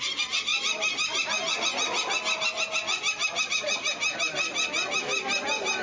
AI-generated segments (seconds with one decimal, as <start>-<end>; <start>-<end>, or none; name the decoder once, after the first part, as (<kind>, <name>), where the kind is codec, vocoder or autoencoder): none